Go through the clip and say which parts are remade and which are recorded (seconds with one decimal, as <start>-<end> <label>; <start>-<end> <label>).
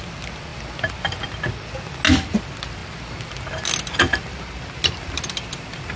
0.0-6.0 recorded